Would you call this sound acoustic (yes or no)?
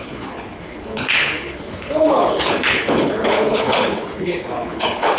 no